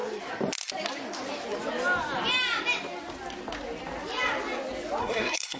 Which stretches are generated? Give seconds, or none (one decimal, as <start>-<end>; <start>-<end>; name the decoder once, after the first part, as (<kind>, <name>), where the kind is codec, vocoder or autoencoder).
5.0-5.6 (codec, SNAC)